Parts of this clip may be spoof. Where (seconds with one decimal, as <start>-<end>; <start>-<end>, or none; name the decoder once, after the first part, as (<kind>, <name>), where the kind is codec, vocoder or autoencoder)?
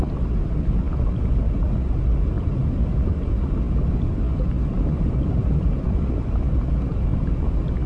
none